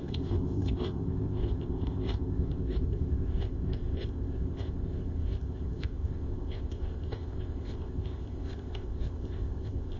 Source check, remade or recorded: remade